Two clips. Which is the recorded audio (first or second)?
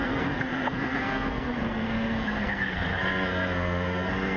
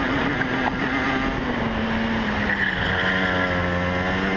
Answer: second